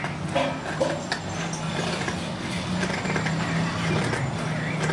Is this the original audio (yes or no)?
yes